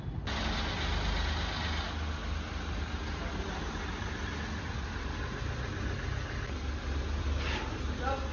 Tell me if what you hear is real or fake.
real